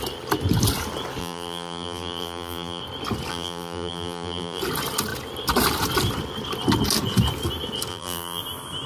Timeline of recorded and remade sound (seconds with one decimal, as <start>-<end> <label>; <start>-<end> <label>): 0.0-1.2 recorded; 1.2-2.8 remade; 2.8-3.3 recorded; 3.3-4.6 remade; 4.6-7.9 recorded; 7.9-8.4 remade; 8.4-8.9 recorded